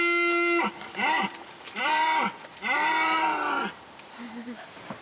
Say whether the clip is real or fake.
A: fake